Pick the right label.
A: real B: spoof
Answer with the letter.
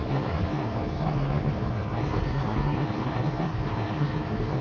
B